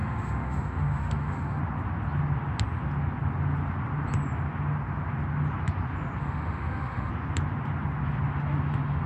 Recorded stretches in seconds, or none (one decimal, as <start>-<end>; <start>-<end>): 1.6-6.2; 7.1-9.1